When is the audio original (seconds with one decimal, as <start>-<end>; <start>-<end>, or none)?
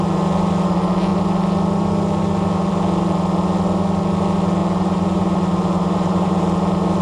0.0-4.6; 6.4-7.0